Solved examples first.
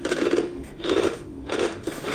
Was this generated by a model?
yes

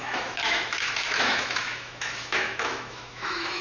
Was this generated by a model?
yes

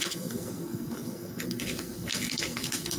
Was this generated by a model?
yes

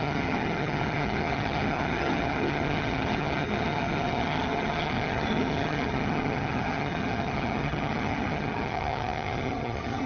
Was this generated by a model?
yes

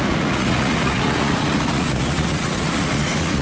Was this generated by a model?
yes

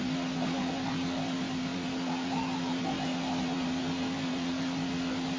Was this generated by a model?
no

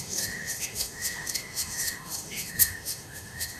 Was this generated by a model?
yes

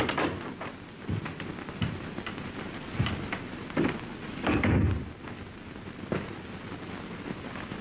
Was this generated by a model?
no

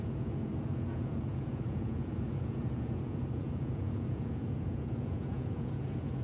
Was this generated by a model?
yes